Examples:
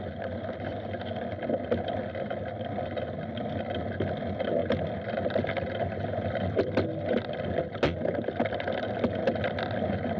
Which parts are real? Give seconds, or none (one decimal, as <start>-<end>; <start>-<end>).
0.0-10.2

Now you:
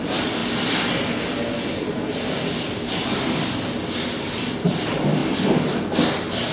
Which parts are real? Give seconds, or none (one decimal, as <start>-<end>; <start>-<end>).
0.0-6.5

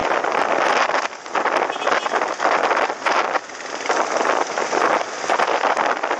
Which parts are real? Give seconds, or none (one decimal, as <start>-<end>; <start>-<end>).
0.0-6.2

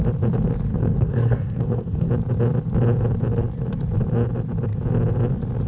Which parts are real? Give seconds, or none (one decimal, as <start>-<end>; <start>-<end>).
0.0-0.7; 2.1-5.7